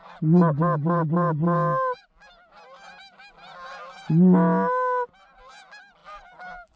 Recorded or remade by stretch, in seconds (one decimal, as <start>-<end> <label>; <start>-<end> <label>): 0.0-6.0 recorded; 6.0-6.8 remade